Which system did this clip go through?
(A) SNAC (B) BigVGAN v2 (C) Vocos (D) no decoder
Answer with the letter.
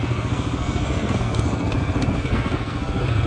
A